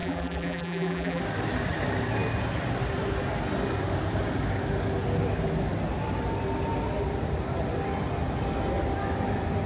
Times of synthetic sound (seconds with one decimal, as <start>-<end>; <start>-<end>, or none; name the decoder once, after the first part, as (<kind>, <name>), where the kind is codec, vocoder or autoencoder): 0.0-1.2 (vocoder, BigVGAN v2)